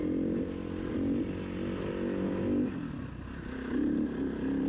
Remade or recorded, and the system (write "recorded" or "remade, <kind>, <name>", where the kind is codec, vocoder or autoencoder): recorded